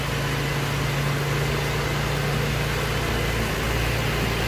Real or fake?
real